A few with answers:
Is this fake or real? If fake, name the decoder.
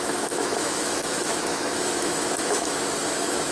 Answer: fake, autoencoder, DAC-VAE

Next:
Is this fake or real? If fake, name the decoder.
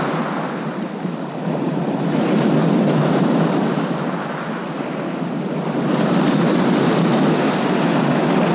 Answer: real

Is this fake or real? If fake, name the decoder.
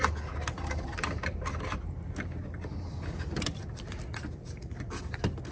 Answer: real